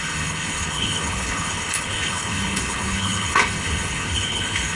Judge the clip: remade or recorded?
remade